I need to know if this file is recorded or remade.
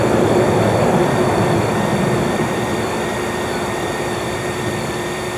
remade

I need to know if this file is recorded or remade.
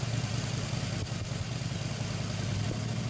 recorded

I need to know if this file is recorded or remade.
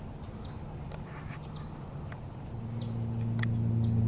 recorded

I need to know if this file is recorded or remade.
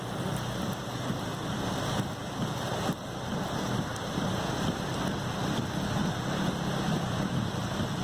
recorded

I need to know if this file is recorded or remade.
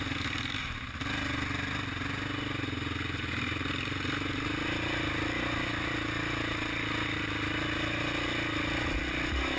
recorded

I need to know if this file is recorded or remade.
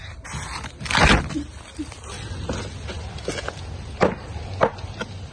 recorded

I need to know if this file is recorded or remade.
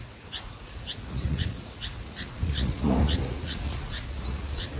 remade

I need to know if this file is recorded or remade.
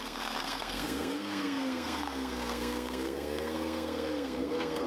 remade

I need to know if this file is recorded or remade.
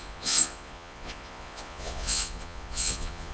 remade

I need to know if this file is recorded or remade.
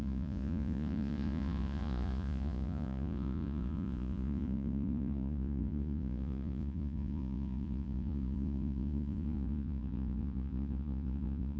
remade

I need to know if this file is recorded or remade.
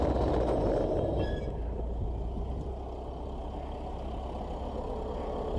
recorded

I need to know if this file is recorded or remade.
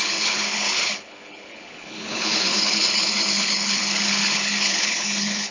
remade